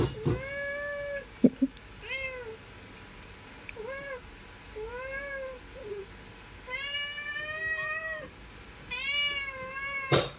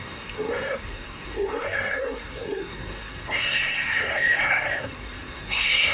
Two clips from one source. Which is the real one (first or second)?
first